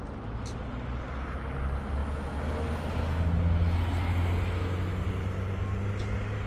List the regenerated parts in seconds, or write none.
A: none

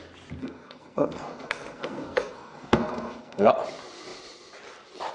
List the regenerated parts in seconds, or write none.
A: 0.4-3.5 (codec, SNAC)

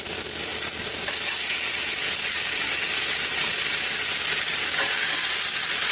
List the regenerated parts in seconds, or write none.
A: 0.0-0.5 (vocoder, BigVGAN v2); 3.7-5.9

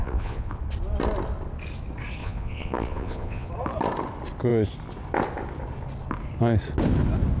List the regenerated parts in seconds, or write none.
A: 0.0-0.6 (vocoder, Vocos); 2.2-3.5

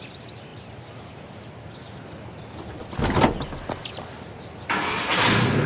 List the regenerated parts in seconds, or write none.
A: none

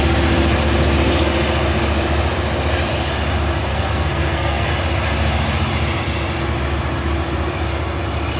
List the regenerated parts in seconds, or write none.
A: 3.7-4.7 (codec, SNAC)